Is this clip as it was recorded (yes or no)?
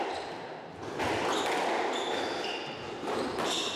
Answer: yes